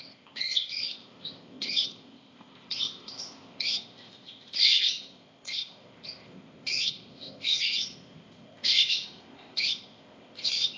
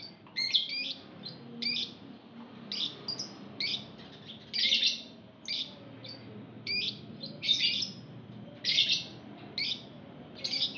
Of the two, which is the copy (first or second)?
first